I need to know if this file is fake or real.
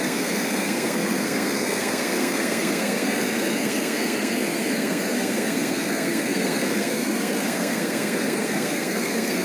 fake